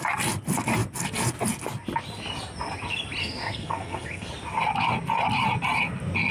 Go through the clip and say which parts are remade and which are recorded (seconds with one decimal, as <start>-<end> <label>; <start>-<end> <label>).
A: 0.0-3.2 recorded; 3.2-4.3 remade; 4.3-6.3 recorded